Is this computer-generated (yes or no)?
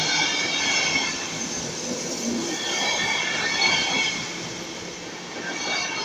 no